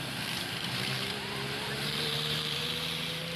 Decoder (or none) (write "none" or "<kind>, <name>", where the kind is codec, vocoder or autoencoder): vocoder, BigVGAN v2